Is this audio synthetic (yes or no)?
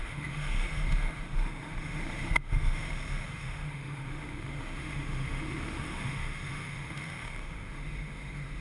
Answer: yes